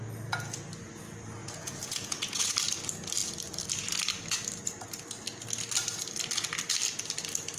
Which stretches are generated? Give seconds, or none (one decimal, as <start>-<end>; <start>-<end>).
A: 1.4-2.5